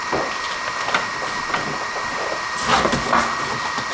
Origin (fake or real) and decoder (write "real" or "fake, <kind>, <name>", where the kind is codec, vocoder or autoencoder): real